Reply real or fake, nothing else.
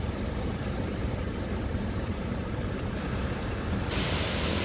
fake